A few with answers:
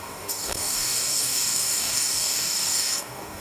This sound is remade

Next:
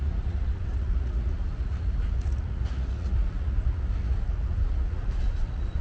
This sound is remade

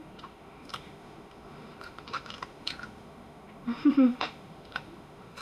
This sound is remade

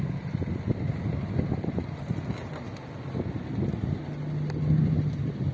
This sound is recorded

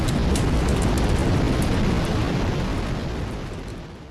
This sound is recorded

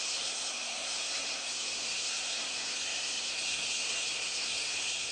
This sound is remade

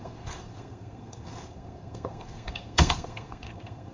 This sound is remade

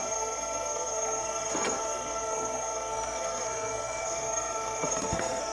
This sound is remade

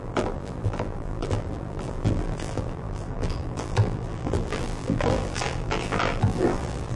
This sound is remade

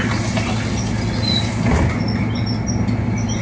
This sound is recorded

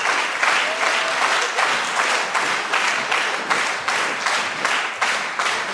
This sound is recorded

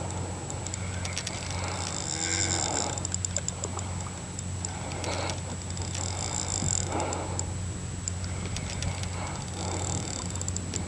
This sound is recorded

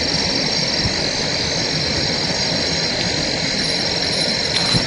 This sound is recorded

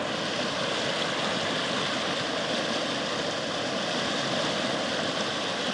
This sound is recorded